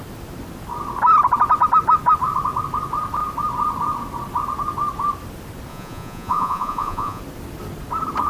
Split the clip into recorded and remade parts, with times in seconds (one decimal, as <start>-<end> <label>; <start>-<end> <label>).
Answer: 0.0-5.7 recorded; 5.7-7.2 remade; 7.2-8.3 recorded